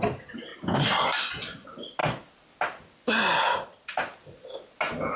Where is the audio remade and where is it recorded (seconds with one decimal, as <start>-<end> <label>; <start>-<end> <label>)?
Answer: 0.0-5.2 recorded